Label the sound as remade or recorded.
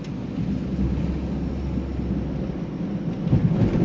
recorded